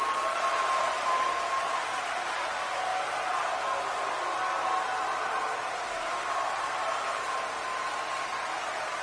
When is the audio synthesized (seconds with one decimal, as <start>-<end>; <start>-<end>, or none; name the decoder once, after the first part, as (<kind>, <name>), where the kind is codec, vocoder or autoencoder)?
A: 0.8-1.8 (vocoder, BigVGAN v2)